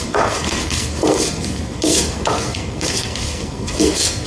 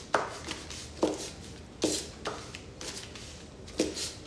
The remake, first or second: first